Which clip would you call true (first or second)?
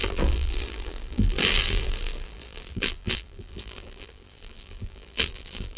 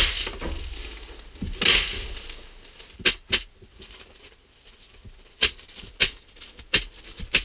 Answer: second